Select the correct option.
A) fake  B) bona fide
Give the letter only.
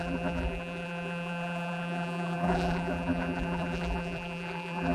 A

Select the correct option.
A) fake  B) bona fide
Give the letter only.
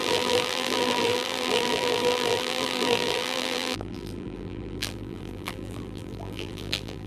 A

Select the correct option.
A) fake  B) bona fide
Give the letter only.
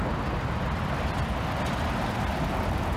B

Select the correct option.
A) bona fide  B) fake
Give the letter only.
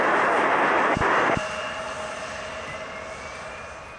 A